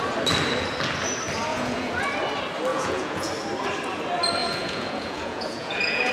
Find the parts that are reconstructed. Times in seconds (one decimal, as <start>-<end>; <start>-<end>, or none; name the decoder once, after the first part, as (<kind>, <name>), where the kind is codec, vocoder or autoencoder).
1.5-2.0 (vocoder, Vocos); 2.7-3.3; 4.4-6.1